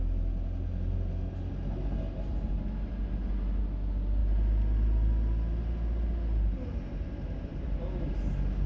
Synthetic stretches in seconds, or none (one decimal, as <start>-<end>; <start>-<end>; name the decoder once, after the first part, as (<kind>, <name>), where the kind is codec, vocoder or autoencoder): none